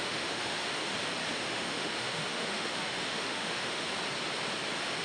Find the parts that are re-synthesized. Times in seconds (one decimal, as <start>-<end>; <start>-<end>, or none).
0.0-0.8; 1.4-3.8